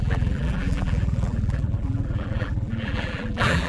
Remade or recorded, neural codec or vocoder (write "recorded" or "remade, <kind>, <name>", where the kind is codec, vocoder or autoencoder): remade, vocoder, BigVGAN v2